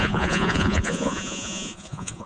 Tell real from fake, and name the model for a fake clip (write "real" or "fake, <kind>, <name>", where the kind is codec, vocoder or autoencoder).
fake, vocoder, Vocos